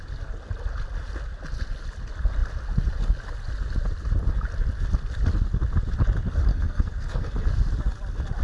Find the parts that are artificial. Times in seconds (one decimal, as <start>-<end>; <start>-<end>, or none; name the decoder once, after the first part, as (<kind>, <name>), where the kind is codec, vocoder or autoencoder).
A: 6.5-7.3 (codec, SNAC)